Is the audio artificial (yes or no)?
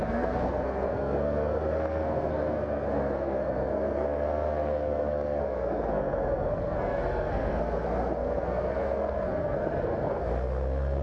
yes